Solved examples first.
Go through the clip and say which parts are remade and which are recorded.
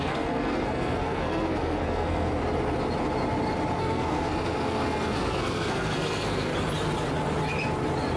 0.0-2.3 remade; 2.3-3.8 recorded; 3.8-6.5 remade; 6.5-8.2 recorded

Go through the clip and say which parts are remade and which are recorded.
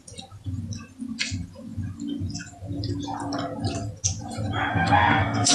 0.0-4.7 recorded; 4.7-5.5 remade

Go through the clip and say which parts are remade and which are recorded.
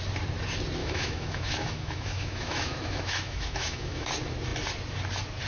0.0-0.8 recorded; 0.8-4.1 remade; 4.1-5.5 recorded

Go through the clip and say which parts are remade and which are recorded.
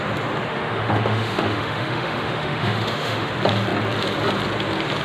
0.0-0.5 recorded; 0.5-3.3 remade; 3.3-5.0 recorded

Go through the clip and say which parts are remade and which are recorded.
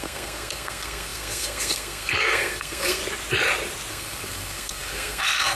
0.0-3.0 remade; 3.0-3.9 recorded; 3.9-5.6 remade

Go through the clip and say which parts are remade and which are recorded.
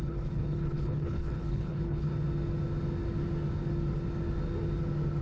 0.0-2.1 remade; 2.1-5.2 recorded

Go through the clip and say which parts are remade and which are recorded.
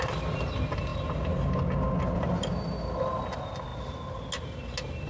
0.0-5.1 recorded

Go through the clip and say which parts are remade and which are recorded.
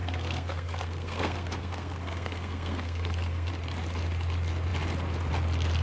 0.0-3.5 remade; 3.5-5.8 recorded